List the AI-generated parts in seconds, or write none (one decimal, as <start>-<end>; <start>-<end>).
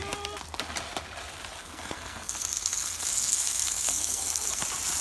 1.6-4.6